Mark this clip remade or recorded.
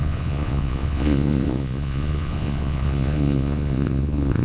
remade